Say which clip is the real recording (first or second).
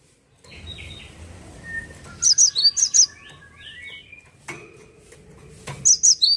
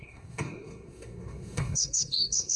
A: first